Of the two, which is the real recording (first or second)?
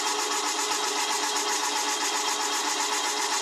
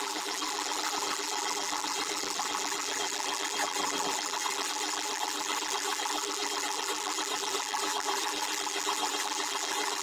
first